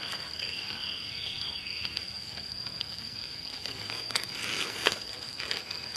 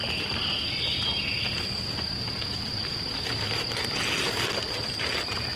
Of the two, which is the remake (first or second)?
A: first